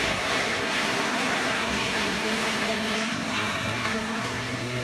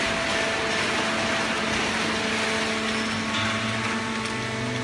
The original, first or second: second